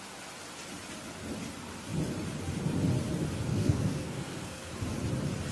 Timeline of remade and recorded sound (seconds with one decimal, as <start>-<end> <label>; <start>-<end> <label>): 0.0-3.5 recorded; 3.5-4.7 remade; 4.7-5.5 recorded